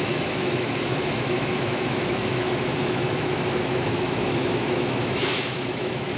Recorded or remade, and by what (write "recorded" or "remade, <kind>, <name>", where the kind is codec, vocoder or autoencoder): remade, autoencoder, DAC-VAE